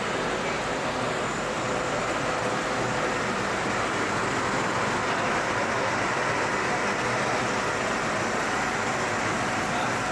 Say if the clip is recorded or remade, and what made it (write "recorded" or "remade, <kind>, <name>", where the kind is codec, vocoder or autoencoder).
remade, vocoder, BigVGAN v2